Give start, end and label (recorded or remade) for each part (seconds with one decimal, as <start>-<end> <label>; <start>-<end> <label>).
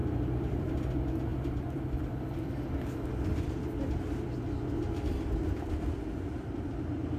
0.0-0.9 remade; 0.9-1.3 recorded; 1.3-3.4 remade; 3.4-7.2 recorded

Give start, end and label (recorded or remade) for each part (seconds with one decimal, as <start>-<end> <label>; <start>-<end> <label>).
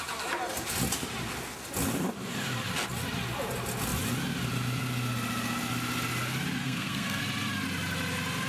0.0-6.6 recorded; 6.6-7.2 remade; 7.2-8.5 recorded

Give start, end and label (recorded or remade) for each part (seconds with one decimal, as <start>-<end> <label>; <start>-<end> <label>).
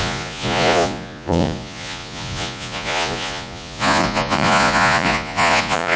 0.0-6.0 remade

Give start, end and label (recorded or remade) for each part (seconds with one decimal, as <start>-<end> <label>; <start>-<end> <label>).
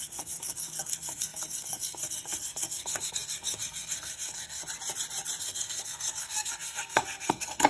0.0-4.6 remade; 4.6-5.4 recorded; 5.4-7.7 remade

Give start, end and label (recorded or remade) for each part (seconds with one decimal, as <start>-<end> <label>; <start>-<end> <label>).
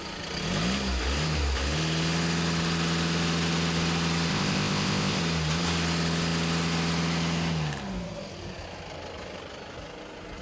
0.0-4.3 recorded; 4.3-5.2 remade; 5.2-10.4 recorded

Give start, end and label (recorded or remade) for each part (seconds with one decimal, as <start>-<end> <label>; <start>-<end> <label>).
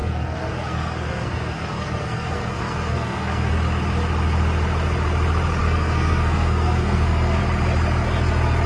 0.0-3.5 remade; 3.5-5.6 recorded; 5.6-7.4 remade; 7.4-8.7 recorded